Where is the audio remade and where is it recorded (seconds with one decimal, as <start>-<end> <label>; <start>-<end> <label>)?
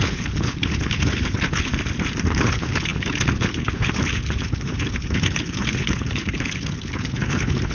0.0-1.7 remade; 1.7-2.3 recorded; 2.3-7.7 remade